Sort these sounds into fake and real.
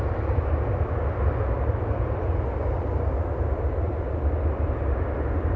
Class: real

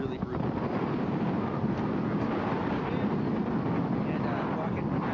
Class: real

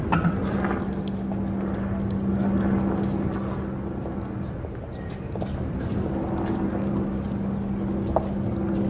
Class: real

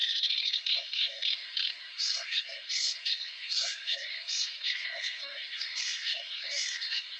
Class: fake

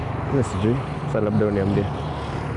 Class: real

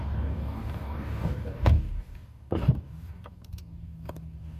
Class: fake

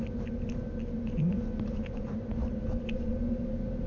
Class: real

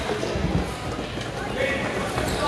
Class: real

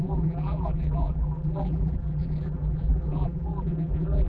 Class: fake